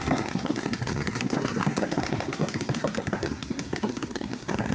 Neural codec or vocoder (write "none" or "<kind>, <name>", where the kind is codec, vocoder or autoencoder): codec, SNAC